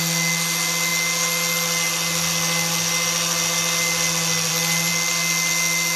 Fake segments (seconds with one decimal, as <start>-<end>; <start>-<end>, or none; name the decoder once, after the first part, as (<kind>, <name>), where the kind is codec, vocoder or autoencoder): none